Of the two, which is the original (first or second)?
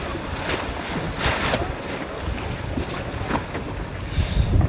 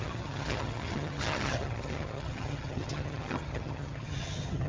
first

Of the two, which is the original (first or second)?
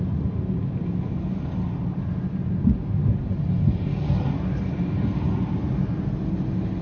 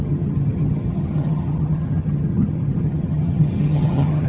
first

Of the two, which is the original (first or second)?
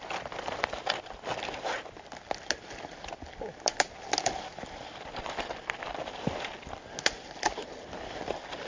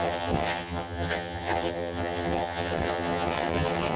first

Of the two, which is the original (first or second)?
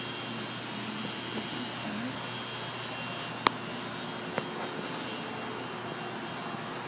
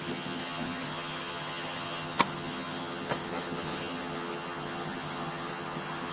first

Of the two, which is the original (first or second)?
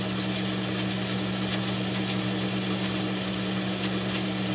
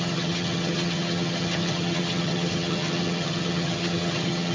first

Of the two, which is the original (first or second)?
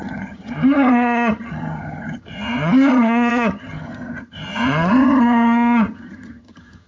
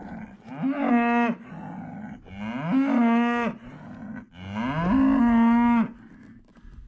second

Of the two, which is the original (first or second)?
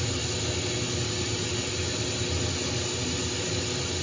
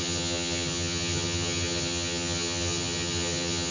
first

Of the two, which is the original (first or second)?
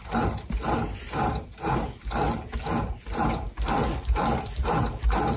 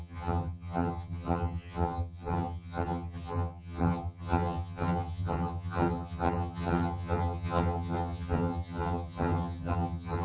first